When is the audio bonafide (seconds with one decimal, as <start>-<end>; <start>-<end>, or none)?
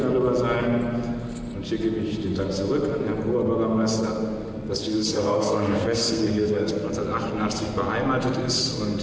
0.0-4.8; 6.7-9.0